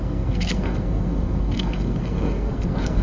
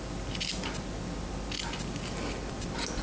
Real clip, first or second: second